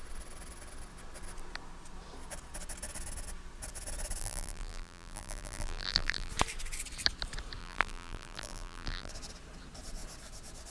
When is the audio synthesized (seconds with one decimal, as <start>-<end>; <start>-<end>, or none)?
4.2-6.3; 7.6-9.1